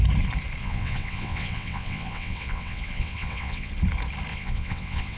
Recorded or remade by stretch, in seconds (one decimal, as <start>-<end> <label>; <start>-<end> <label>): 0.0-0.6 recorded; 0.6-3.7 remade; 3.7-4.3 recorded; 4.3-5.2 remade